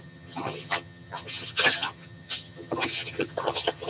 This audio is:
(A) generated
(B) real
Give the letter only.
A